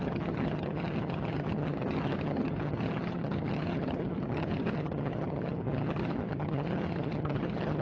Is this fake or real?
fake